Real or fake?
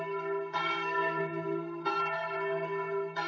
fake